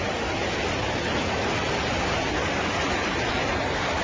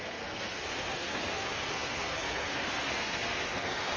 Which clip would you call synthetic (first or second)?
second